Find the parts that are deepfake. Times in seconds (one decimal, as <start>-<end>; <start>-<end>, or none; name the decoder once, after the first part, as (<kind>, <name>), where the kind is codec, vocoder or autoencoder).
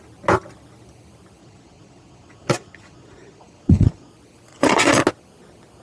1.4-4.1 (vocoder, Vocos); 4.5-5.0